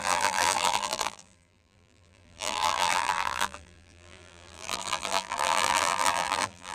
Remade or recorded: remade